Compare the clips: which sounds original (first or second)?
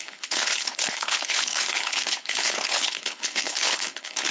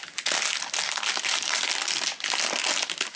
second